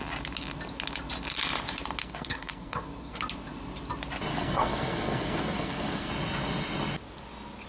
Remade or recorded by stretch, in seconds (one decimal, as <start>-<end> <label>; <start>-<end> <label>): 0.0-2.0 recorded; 2.0-3.2 remade; 3.2-4.3 recorded; 4.3-6.1 remade; 6.1-7.7 recorded